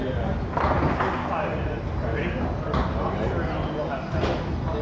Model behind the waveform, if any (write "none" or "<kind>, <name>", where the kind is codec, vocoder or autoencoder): none